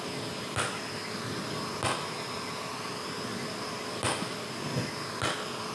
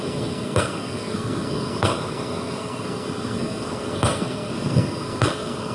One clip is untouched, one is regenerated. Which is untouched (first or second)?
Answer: first